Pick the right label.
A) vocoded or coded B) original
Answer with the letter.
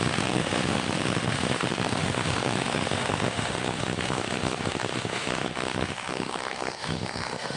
A